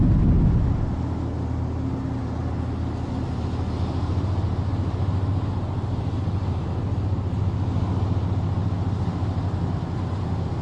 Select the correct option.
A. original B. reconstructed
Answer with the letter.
A